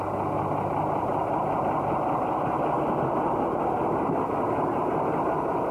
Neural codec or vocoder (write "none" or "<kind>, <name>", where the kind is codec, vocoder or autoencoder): none